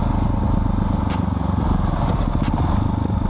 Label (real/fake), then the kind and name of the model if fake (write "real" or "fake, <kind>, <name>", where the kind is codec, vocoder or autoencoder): real